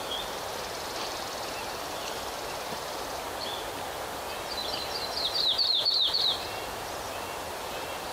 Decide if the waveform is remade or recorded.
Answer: remade